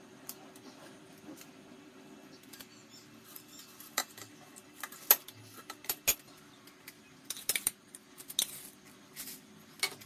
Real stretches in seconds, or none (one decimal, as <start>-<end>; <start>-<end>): 0.0-2.8; 4.2-10.1